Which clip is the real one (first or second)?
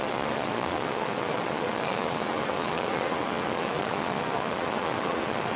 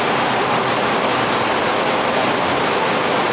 second